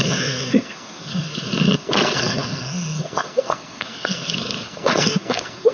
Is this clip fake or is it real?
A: fake